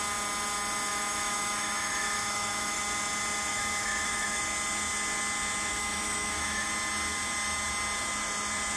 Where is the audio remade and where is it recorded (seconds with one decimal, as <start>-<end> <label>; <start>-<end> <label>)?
0.0-0.9 recorded; 0.9-2.8 remade; 2.8-3.5 recorded; 3.5-4.4 remade; 4.4-5.7 recorded; 5.7-6.7 remade; 6.7-8.8 recorded